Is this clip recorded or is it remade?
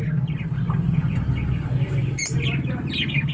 recorded